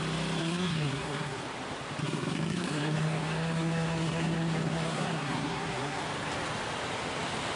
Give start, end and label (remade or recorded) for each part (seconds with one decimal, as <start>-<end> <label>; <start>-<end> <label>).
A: 0.0-0.4 recorded; 0.4-1.4 remade; 1.4-2.0 recorded; 2.0-6.0 remade; 6.0-7.6 recorded